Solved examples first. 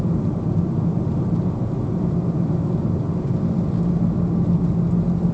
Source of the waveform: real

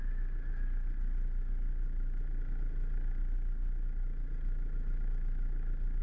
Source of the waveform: real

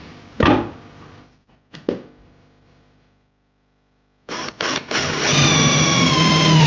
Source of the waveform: real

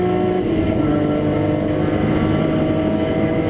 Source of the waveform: real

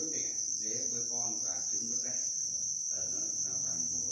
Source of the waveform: real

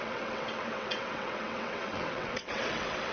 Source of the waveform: fake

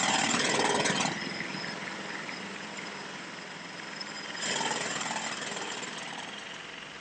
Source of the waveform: fake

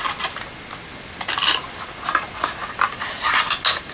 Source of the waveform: real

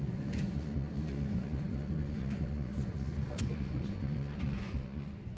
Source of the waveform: fake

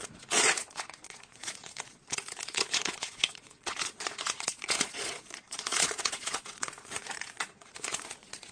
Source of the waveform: fake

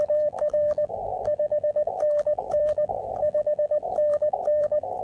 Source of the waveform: fake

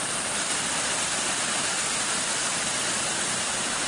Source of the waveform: real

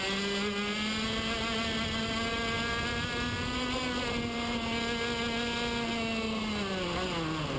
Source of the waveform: real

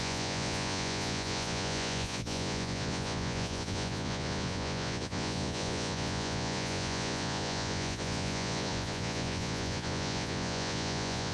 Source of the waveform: fake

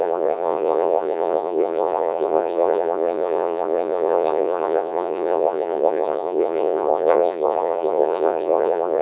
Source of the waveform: fake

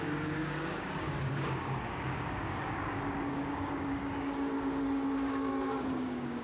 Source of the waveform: fake